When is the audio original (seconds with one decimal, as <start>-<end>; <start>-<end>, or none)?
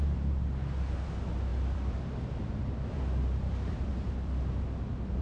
0.0-1.5; 4.6-5.2